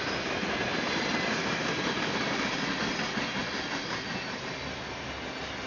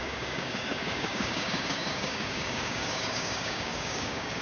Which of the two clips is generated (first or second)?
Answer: second